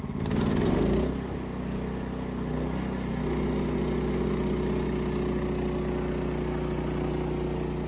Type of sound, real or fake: real